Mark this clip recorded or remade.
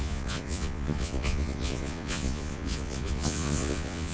remade